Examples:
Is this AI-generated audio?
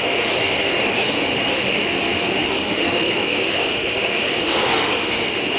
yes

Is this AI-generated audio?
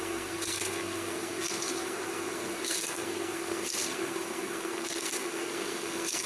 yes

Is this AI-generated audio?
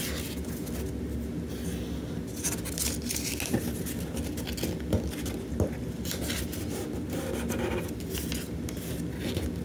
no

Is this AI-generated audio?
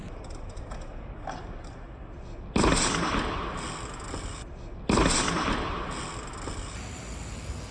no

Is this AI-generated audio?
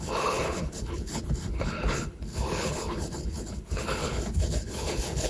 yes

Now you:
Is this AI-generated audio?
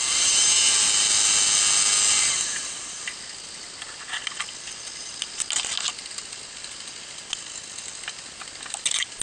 no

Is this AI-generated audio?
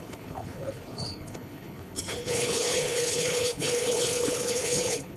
yes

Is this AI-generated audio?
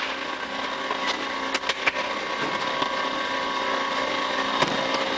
no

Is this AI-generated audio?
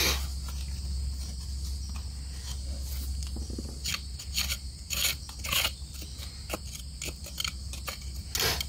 no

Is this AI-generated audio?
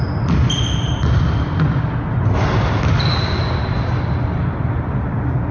no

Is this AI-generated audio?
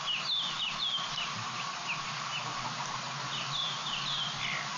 no